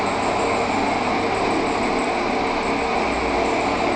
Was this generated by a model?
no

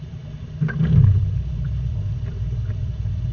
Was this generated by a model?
yes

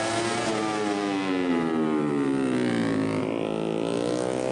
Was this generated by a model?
no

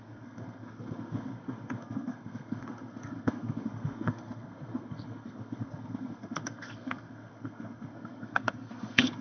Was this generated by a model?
yes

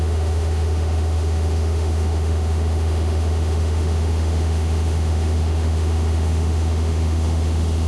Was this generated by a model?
yes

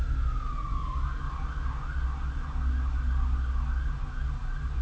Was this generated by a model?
no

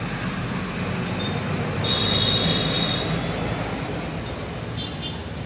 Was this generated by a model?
no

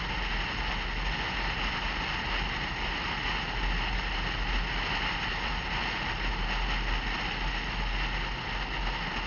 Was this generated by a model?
no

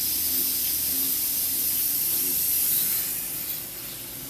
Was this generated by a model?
no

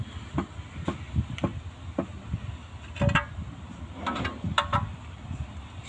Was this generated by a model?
no